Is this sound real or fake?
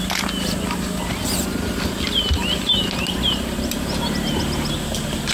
real